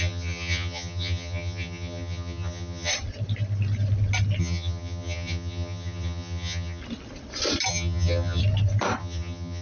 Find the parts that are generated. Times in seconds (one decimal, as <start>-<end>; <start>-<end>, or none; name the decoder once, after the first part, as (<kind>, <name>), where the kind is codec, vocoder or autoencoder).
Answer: 0.0-2.9 (vocoder, HiFi-GAN); 4.4-6.8; 7.7-8.4; 9.0-9.6